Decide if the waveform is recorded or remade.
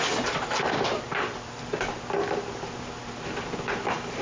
recorded